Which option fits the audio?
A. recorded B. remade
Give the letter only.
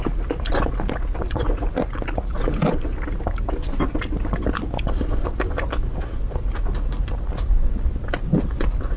A